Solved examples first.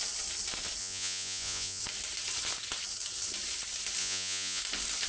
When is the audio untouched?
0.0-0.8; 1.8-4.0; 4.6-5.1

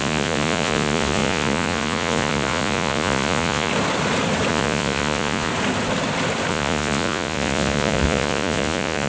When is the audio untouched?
3.7-4.5; 5.5-6.5

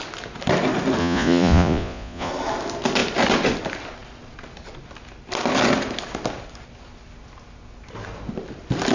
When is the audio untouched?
0.0-1.0; 2.3-8.9

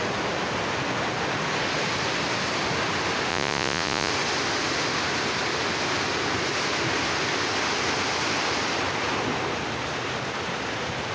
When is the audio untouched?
0.0-3.3; 4.1-11.1

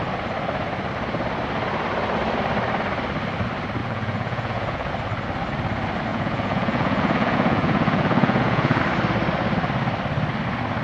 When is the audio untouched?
0.0-3.8; 4.9-6.1; 8.8-10.8

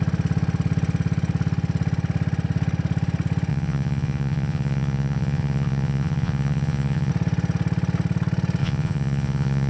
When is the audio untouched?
0.0-3.5; 7.1-8.6